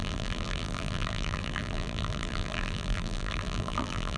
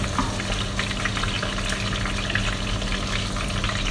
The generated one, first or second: first